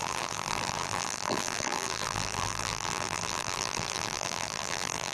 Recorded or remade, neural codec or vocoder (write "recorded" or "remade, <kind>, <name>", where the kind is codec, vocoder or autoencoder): remade, vocoder, BigVGAN v2